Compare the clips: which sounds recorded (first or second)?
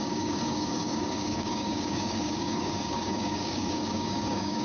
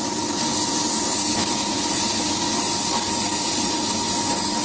second